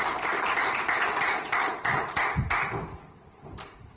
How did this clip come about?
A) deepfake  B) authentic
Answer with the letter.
B